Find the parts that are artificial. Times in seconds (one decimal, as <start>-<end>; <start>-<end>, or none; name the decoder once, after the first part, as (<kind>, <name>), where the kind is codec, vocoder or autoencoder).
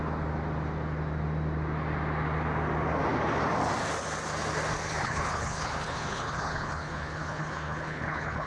5.0-8.5 (codec, HILCodec)